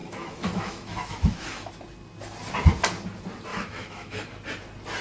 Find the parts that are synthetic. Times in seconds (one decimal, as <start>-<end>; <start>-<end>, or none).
0.0-1.7; 3.5-4.3